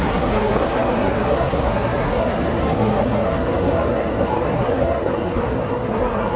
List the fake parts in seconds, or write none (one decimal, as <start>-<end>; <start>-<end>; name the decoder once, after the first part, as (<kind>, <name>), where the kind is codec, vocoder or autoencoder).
0.0-6.4 (codec, SNAC)